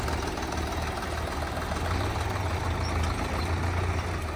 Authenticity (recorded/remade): recorded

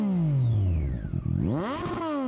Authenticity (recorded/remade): recorded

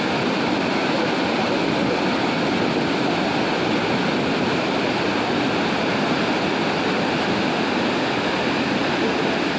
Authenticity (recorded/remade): recorded